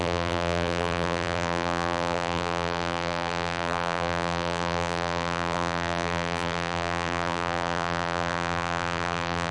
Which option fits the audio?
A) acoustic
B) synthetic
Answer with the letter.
B